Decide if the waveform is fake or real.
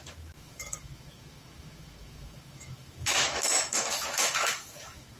fake